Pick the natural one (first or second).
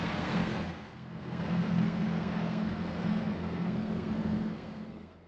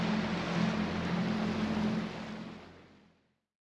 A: second